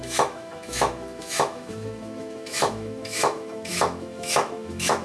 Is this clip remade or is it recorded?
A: remade